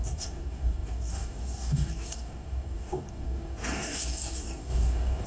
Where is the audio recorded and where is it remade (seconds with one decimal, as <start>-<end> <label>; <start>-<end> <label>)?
0.0-5.3 remade